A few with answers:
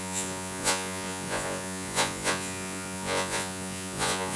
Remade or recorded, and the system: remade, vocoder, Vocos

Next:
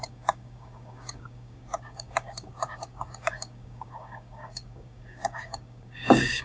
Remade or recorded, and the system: remade, codec, DAC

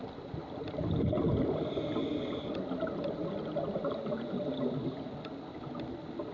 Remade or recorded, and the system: recorded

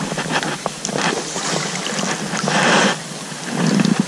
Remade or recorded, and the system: recorded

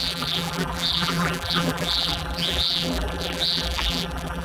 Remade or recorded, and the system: remade, vocoder, BigVGAN v2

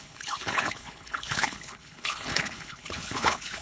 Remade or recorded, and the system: remade, codec, HILCodec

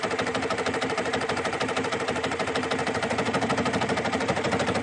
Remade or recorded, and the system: remade, vocoder, BigVGAN v2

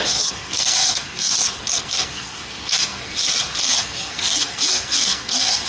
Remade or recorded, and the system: remade, codec, SNAC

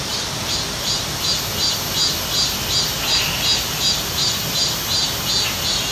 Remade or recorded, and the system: recorded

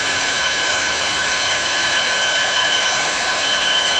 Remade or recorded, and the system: remade, codec, HILCodec